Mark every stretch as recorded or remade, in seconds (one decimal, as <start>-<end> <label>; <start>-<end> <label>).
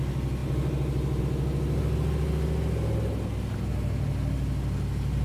0.0-5.2 recorded